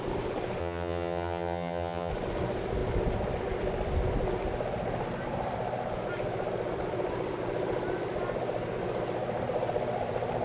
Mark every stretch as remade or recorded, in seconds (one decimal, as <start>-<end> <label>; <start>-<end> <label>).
0.0-0.6 recorded; 0.6-2.1 remade; 2.1-10.4 recorded